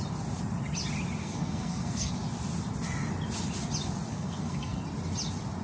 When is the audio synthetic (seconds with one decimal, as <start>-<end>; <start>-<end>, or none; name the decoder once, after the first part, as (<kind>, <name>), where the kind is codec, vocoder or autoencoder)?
1.2-2.1 (codec, SNAC); 4.1-4.8